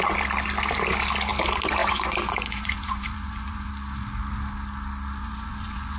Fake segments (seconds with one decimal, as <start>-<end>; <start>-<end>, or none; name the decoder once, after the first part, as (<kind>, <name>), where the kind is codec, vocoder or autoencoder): 1.8-3.7 (vocoder, Vocos); 5.2-6.0